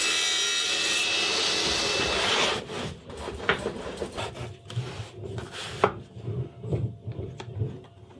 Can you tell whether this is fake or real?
real